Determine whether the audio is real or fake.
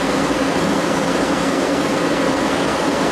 fake